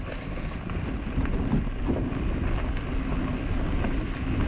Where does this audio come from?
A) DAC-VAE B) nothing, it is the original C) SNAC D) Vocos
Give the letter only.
B